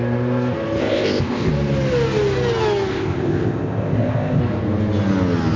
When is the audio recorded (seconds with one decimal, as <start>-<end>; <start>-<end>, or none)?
0.0-0.8; 1.5-2.9; 4.4-5.6